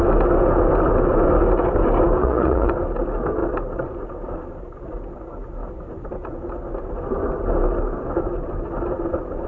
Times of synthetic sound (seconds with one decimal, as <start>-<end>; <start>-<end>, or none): 2.2-2.7